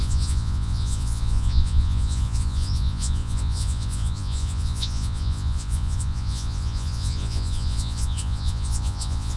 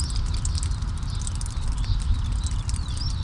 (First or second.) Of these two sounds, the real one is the second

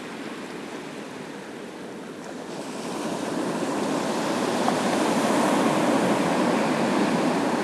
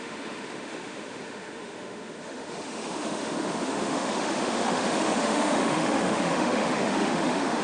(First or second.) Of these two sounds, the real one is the first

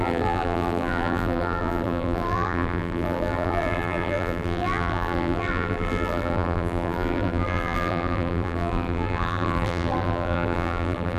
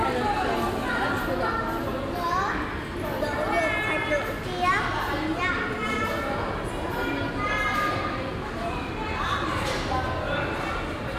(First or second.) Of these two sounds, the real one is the second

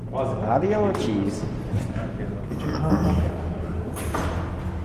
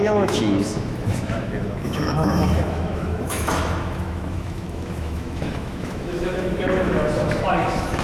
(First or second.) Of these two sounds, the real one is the first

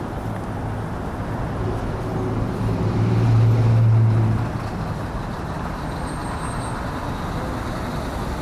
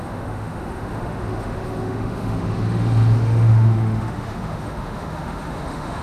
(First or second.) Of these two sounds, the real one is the first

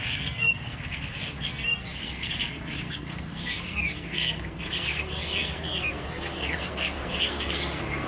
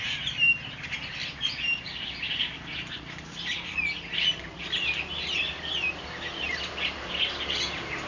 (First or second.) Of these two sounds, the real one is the second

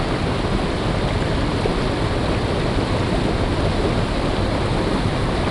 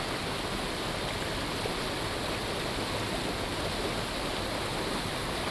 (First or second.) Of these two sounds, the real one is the second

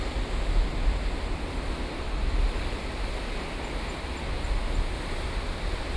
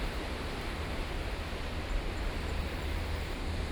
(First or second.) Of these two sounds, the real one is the first